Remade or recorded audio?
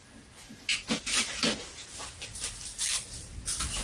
recorded